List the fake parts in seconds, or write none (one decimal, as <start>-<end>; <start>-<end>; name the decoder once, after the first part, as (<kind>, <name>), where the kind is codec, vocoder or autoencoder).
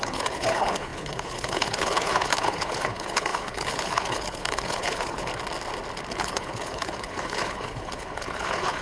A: 0.0-5.3 (codec, HILCodec); 6.1-8.8